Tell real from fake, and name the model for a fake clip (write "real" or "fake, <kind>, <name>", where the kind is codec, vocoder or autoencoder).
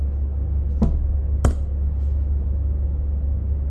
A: real